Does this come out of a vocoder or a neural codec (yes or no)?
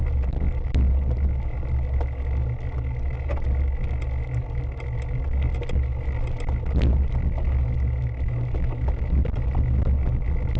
no